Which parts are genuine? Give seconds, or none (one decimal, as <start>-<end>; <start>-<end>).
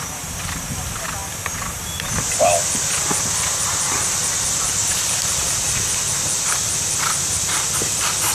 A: 0.0-8.3